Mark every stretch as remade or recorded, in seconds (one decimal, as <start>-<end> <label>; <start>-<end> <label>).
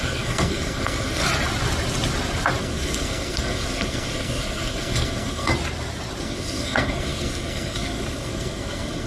0.0-1.2 remade; 1.2-2.6 recorded; 2.6-5.5 remade; 5.5-6.2 recorded; 6.2-9.1 remade